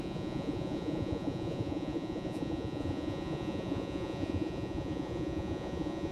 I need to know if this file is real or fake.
fake